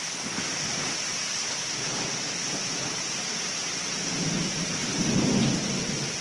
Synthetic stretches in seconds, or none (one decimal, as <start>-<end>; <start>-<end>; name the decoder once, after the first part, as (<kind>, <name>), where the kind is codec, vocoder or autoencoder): 2.6-3.2 (vocoder, BigVGAN v2); 4.8-5.4